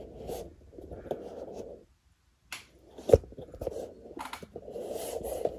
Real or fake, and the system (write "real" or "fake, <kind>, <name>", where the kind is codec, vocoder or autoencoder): real